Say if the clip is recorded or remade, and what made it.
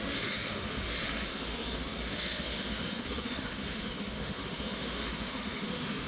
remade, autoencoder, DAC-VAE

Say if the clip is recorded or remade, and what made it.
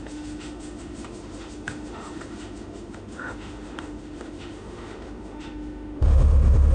remade, autoencoder, DAC-VAE